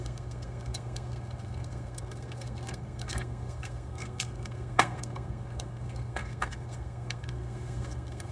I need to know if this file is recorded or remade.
remade